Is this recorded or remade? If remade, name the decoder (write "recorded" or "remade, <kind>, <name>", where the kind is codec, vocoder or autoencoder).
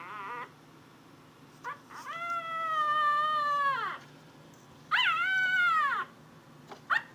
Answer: recorded